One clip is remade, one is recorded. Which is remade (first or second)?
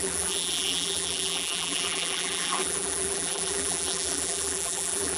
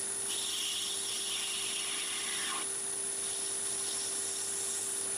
first